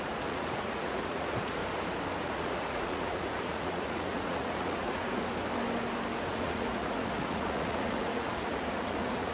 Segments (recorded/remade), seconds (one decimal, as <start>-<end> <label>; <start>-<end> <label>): 0.0-1.6 remade; 1.6-2.2 recorded; 2.2-5.2 remade; 5.2-6.3 recorded; 6.3-9.3 remade